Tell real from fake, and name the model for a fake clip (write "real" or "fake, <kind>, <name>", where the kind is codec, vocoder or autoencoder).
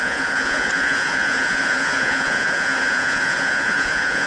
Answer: fake, vocoder, Vocos